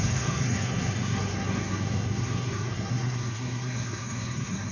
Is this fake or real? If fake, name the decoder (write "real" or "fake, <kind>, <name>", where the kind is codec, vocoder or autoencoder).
fake, codec, SNAC